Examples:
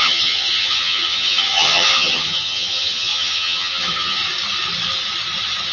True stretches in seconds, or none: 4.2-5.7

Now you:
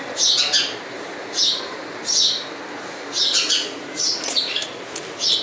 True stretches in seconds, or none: 0.0-1.2; 1.7-3.2; 5.0-5.4

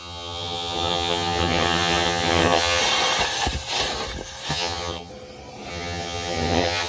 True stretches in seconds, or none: 2.8-4.5; 5.1-5.7

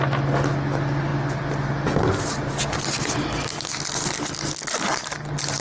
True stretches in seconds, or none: 0.0-5.6

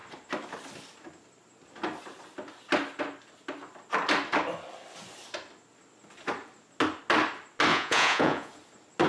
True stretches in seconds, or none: 0.0-7.7; 8.5-9.1

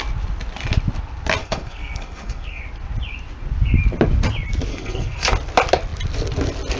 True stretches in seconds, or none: 0.0-1.4; 2.6-4.7; 5.3-6.8

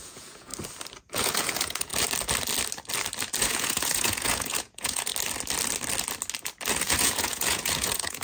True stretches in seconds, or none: 0.5-1.0; 1.9-3.4; 5.1-6.7

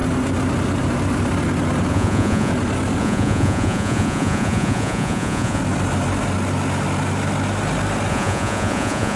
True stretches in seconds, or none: 0.0-1.9; 2.5-3.0; 5.6-8.1